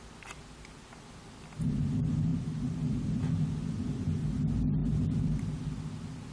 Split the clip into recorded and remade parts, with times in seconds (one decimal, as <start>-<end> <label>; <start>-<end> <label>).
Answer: 0.0-4.8 recorded; 4.8-5.3 remade; 5.3-6.3 recorded